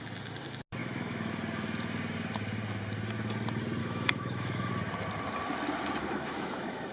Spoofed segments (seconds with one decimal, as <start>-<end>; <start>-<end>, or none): 0.8-1.3; 3.8-4.7; 6.0-6.9